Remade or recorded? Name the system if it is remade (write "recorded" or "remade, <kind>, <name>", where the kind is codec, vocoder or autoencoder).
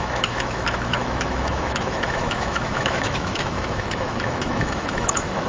remade, autoencoder, DAC-VAE